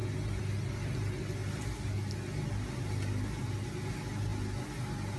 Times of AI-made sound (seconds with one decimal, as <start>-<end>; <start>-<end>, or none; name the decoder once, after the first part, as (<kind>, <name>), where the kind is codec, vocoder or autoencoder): none